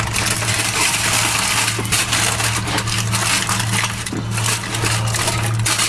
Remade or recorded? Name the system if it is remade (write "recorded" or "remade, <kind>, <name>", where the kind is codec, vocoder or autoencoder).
recorded